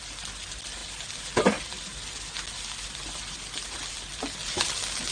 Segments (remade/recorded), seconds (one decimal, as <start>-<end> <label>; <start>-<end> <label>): 0.0-5.1 recorded